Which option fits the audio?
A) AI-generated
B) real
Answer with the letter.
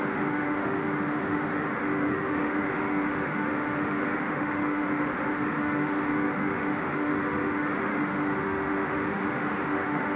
A